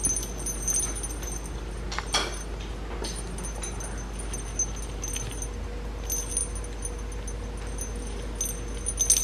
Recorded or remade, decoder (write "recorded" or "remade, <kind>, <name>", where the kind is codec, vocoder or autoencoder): recorded